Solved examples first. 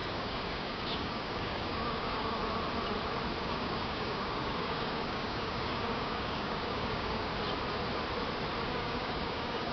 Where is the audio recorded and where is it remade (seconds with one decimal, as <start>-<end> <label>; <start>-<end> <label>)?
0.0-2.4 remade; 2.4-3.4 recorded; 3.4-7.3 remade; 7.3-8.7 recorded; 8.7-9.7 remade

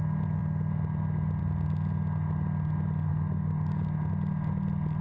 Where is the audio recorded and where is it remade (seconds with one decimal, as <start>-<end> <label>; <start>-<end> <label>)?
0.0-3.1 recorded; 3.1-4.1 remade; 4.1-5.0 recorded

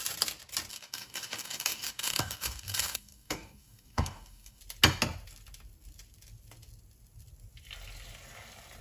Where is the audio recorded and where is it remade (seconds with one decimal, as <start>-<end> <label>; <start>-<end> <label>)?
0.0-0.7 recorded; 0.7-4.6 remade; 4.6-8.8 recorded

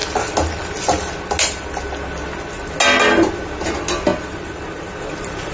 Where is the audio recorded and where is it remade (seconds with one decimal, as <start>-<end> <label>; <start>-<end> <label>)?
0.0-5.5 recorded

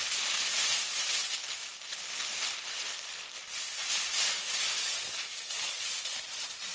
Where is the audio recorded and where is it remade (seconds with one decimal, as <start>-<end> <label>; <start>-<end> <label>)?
0.0-4.8 recorded; 4.8-5.8 remade; 5.8-6.7 recorded

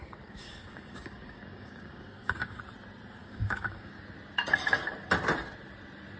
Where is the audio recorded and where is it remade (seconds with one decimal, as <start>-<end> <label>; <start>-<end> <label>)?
0.0-2.6 remade; 2.6-3.2 recorded; 3.2-4.0 remade; 4.0-6.2 recorded